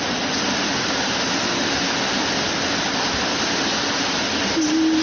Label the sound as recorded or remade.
recorded